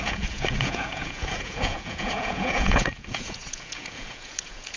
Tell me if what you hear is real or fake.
fake